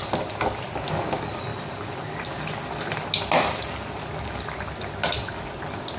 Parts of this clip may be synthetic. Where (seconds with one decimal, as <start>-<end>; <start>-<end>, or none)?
none